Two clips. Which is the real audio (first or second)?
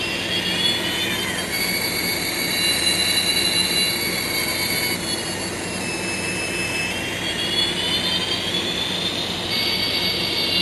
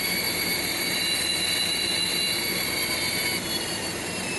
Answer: first